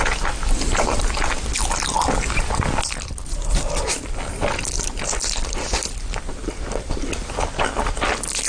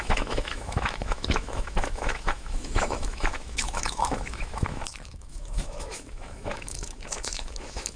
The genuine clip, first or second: first